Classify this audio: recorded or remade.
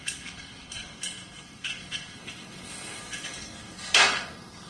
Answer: remade